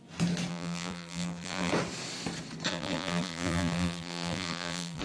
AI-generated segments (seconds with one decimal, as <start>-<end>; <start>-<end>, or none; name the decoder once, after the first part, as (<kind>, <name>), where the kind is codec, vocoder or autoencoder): 0.5-1.7 (vocoder, BigVGAN v2); 2.7-5.0